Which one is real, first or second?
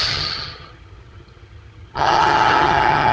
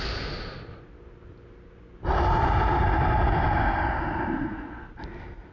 second